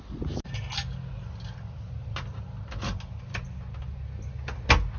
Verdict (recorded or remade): recorded